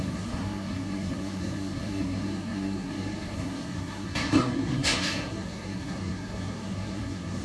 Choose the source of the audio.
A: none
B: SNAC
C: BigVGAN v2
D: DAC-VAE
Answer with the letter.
B